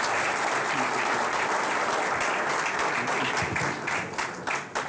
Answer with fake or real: real